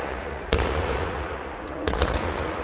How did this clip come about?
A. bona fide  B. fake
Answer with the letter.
B